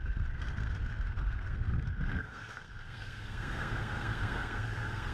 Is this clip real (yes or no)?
no